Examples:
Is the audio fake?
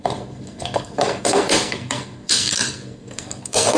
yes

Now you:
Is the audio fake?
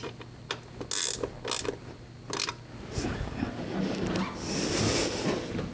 no